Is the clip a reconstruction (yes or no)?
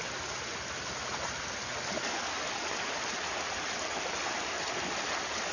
no